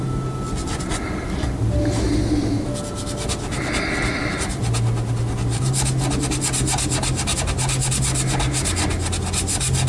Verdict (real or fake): real